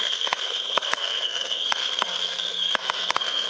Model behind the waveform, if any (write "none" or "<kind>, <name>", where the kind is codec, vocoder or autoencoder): codec, SNAC